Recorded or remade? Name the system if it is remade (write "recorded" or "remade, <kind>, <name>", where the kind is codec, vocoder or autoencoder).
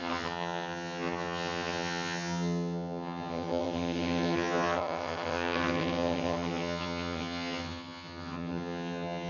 remade, vocoder, HiFi-GAN